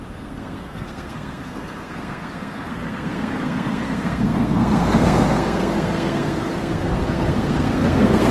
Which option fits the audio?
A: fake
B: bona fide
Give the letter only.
A